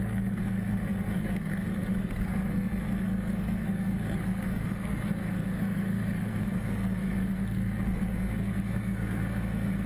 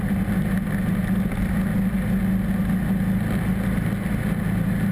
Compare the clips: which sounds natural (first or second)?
second